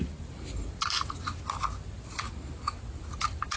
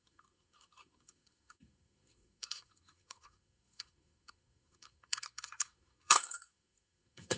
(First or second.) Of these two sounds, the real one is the first